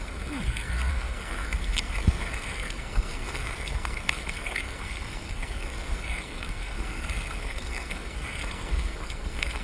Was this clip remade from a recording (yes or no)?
yes